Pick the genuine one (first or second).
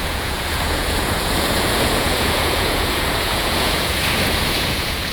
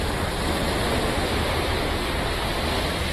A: second